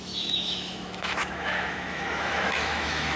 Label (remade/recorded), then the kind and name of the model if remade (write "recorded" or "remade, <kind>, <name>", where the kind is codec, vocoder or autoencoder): remade, autoencoder, DAC-VAE